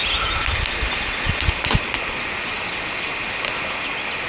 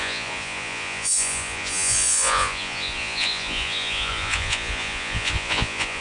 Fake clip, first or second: second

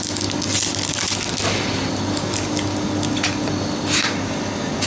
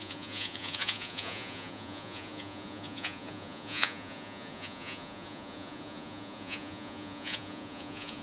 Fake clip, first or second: second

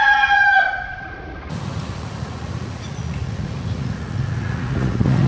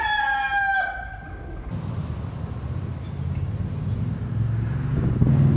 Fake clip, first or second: first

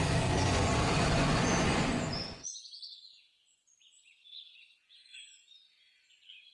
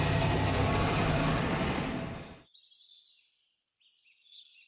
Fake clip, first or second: first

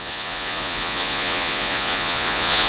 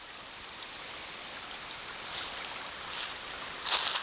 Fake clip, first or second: first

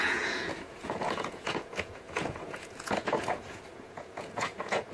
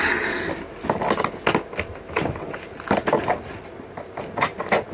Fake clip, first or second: first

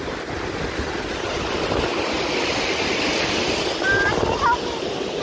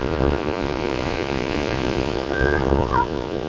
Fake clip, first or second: second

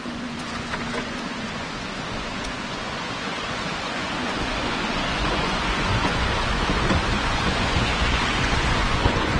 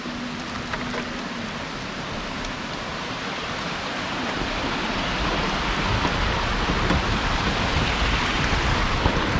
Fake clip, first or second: first